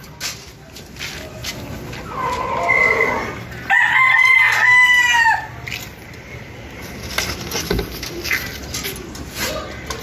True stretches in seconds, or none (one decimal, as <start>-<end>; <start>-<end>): 0.0-3.9; 5.0-10.0